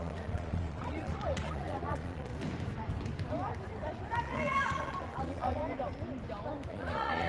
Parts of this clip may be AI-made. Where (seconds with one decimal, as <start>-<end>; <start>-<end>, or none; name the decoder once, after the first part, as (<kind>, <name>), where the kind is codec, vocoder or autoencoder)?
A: 0.0-2.3 (vocoder, Vocos); 4.2-5.6; 6.7-7.3